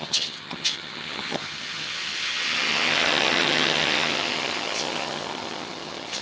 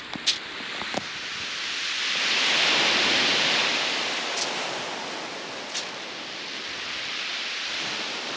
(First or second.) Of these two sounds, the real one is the second